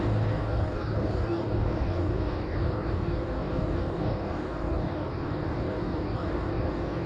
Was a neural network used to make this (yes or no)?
yes